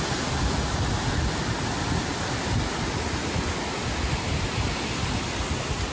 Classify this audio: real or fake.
real